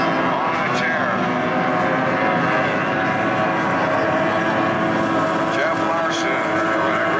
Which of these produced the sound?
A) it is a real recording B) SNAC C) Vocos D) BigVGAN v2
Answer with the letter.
A